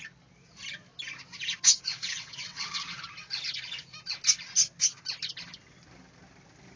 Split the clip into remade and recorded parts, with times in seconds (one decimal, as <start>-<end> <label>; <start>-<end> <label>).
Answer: 0.0-1.9 recorded; 1.9-3.0 remade; 3.0-6.8 recorded